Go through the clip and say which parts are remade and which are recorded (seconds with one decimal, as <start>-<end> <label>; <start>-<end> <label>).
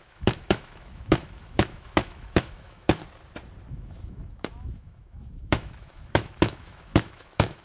0.0-3.0 remade; 3.0-3.7 recorded; 3.7-7.6 remade